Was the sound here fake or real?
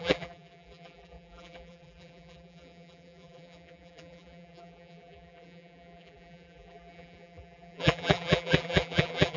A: fake